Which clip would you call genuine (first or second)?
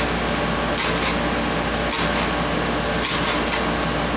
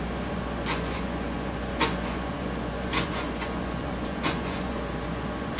first